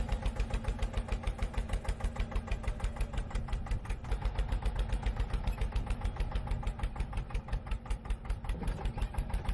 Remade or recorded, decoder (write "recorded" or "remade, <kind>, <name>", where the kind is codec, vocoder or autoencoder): recorded